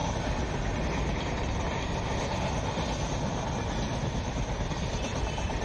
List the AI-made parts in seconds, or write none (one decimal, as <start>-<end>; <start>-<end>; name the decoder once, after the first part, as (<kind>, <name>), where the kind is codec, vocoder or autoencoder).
none